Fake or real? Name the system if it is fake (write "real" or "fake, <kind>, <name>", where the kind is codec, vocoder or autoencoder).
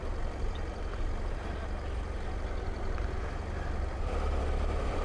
fake, vocoder, BigVGAN v2